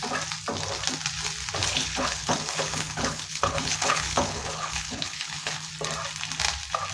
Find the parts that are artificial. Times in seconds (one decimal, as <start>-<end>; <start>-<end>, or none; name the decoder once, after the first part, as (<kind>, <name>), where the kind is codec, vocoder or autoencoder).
1.6-5.7 (codec, HILCodec)